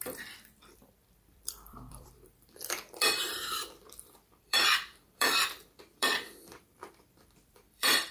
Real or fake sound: fake